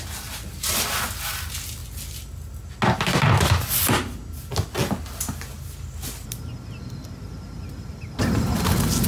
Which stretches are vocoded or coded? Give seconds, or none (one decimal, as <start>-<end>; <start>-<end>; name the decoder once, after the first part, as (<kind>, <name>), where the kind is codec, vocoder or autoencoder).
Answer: none